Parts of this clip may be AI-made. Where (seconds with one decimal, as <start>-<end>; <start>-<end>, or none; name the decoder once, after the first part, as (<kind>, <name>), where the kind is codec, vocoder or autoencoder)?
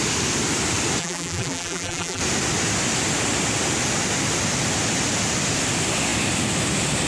1.0-2.2 (vocoder, BigVGAN v2)